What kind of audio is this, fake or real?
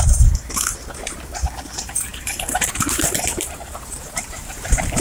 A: fake